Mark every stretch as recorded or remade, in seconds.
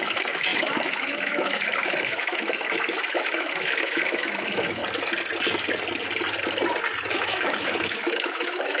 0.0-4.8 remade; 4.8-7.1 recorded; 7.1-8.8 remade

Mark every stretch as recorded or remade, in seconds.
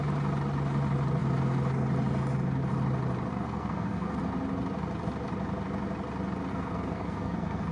0.0-3.3 recorded; 3.3-4.2 remade; 4.2-6.5 recorded; 6.5-7.7 remade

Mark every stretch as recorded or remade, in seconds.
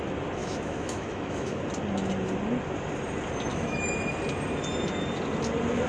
0.0-0.4 recorded; 0.4-1.6 remade; 1.6-3.5 recorded; 3.5-4.1 remade; 4.1-5.9 recorded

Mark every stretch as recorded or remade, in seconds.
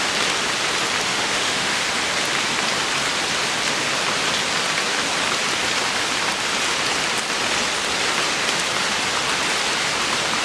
0.0-1.1 recorded; 1.1-1.8 remade; 1.8-10.4 recorded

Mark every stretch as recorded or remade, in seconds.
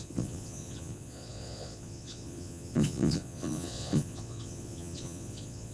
0.0-5.7 remade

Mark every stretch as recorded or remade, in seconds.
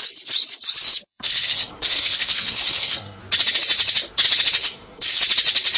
0.0-0.9 recorded; 0.9-3.2 remade; 3.2-4.6 recorded; 4.6-5.2 remade; 5.2-5.8 recorded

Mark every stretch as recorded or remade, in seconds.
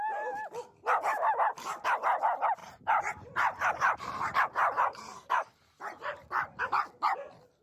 0.0-2.6 recorded; 2.6-6.6 remade; 6.6-7.6 recorded